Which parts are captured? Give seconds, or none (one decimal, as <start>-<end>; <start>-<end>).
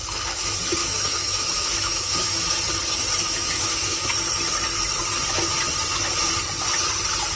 0.0-0.8; 2.5-3.2; 4.1-7.4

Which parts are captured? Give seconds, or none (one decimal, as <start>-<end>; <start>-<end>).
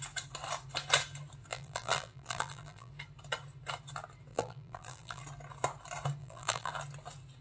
0.0-1.5; 2.9-4.3; 5.2-6.2; 6.7-7.4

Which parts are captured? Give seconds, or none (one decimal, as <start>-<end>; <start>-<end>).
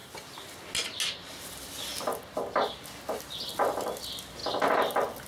0.0-5.3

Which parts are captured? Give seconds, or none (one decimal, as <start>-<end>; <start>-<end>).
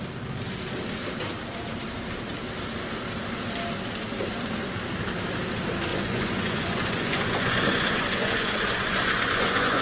0.0-5.9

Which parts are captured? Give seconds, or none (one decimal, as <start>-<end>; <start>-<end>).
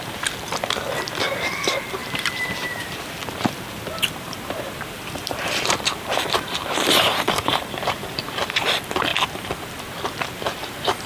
9.1-10.4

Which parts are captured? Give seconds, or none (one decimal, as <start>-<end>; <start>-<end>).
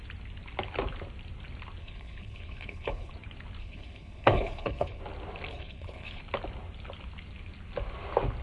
0.0-1.8; 3.1-3.6; 5.0-5.5; 6.2-8.4